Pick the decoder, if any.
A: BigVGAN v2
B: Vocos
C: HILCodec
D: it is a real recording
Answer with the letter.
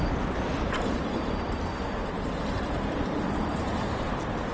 A